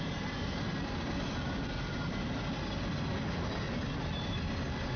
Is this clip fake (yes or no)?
no